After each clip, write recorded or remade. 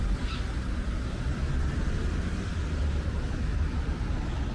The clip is recorded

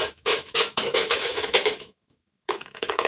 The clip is remade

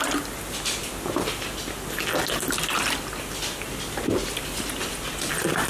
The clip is recorded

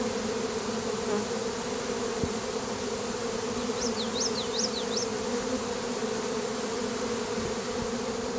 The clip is recorded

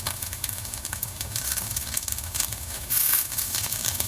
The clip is remade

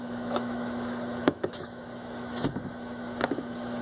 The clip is remade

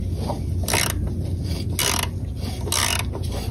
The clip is recorded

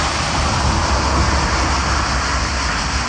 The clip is recorded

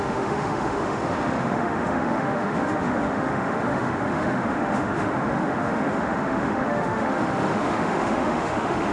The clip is remade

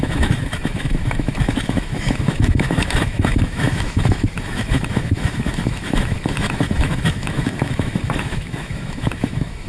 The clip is remade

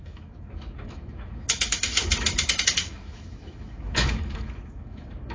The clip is remade